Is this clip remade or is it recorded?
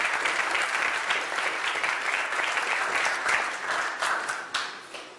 remade